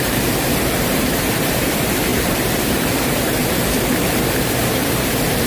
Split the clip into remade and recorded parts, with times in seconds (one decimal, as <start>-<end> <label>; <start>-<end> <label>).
0.0-5.5 remade